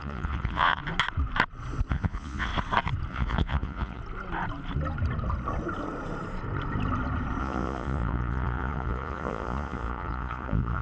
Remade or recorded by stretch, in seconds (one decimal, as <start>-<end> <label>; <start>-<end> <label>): 0.0-0.8 remade; 0.8-1.9 recorded; 1.9-2.5 remade; 2.5-3.1 recorded; 3.1-4.0 remade; 4.0-7.4 recorded; 7.4-10.8 remade